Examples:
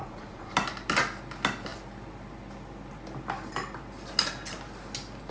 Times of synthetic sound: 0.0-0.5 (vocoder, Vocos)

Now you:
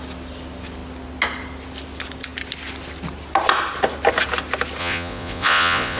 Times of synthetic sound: 4.8-6.0 (vocoder, Vocos)

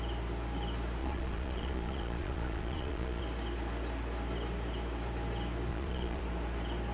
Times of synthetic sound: 1.0-3.2 (vocoder, Vocos); 5.7-6.2

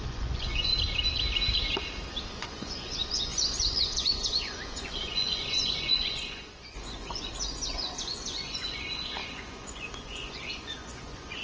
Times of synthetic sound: 0.0-0.7 (vocoder, Vocos); 2.3-11.4

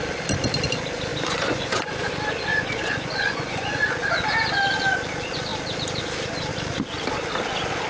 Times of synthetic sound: 1.1-2.1 (vocoder, Vocos); 2.5-3.8